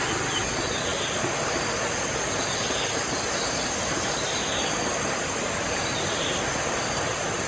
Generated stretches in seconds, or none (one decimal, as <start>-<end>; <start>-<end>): none